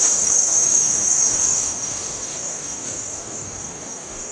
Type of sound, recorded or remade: remade